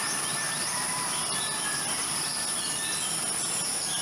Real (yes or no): yes